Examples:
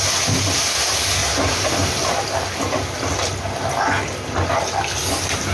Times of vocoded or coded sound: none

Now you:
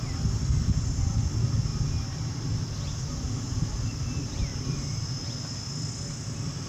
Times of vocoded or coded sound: 4.5-5.0 (vocoder, BigVGAN v2)